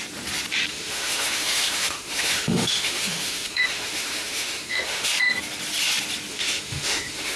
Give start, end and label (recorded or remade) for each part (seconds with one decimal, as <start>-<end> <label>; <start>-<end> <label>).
0.0-0.7 recorded; 0.7-5.1 remade; 5.1-6.3 recorded; 6.3-7.4 remade